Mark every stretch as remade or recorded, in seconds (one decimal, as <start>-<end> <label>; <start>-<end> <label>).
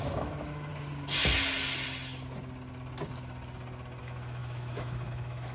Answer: 0.0-0.7 remade; 0.7-4.0 recorded; 4.0-5.5 remade